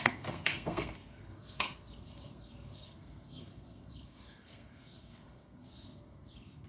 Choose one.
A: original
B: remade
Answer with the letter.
B